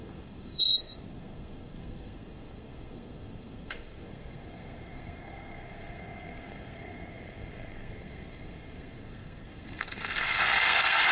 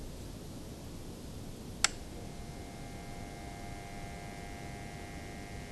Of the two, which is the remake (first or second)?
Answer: first